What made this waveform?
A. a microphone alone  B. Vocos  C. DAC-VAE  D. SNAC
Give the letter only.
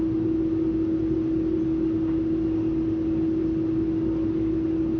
A